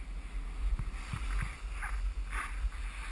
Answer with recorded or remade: recorded